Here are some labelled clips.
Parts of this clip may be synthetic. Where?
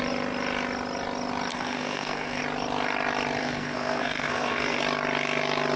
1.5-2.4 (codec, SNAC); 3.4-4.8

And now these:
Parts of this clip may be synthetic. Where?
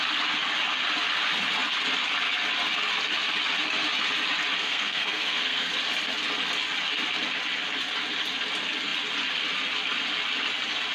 4.6-5.7 (codec, SNAC)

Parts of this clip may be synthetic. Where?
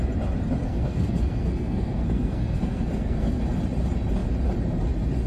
0.6-3.4 (codec, SNAC)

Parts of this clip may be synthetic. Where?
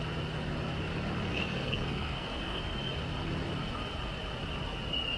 1.3-2.6 (codec, SNAC)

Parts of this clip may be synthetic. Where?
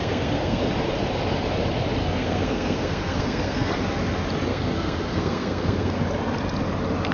0.0-0.6 (codec, SNAC); 2.0-3.7; 4.5-6.0